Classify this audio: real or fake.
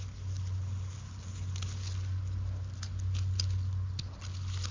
real